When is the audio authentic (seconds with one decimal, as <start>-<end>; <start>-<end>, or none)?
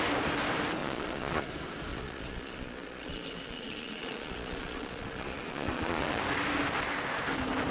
0.0-0.8; 1.5-1.9; 6.2-7.7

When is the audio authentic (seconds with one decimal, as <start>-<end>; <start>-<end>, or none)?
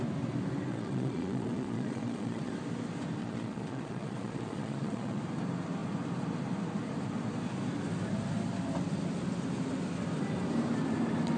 0.0-0.7; 2.5-3.2; 5.2-11.4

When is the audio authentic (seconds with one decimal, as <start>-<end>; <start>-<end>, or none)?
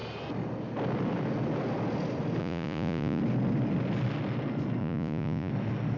0.0-2.4; 3.2-4.8; 5.5-6.0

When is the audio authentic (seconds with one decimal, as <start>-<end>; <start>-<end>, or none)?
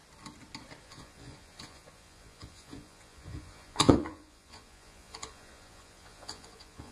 0.0-0.8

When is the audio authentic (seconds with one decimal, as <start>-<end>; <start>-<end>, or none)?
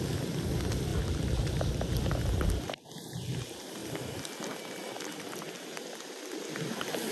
0.0-7.1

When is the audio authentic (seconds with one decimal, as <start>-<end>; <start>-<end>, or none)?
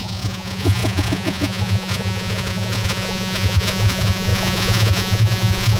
none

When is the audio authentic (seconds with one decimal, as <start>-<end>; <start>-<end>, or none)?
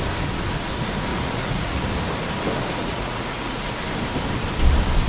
0.0-1.1; 1.8-2.8; 3.7-5.1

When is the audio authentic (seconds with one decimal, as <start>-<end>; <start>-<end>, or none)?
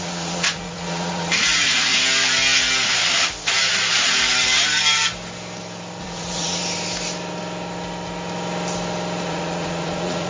1.9-6.0; 6.6-9.3